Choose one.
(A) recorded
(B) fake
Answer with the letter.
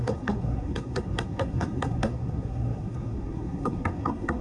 B